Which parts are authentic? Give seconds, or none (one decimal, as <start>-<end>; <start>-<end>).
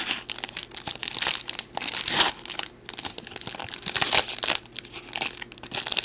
0.0-6.0